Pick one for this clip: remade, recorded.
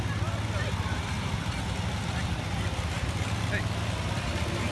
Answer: recorded